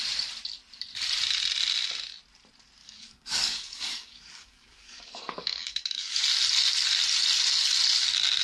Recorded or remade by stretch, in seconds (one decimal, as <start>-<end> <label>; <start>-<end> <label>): 0.0-2.8 recorded; 2.8-6.2 remade; 6.2-8.4 recorded